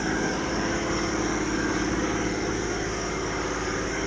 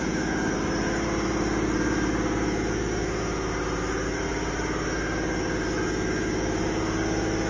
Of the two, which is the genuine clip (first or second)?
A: second